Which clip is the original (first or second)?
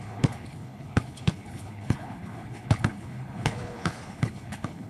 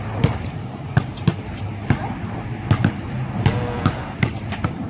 second